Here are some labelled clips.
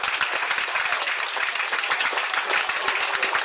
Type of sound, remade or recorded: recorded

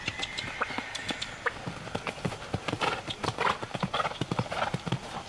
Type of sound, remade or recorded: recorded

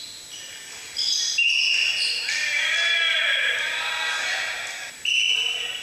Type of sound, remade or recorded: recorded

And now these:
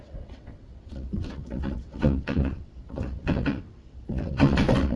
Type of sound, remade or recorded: remade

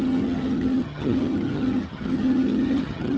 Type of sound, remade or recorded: remade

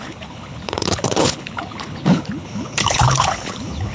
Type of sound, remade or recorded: remade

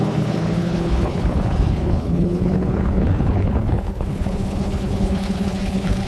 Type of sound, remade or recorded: remade